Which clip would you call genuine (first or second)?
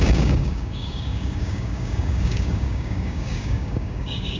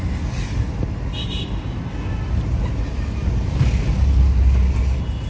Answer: second